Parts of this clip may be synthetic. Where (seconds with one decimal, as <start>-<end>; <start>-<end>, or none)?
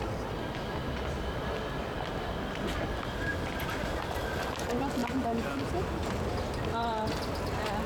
none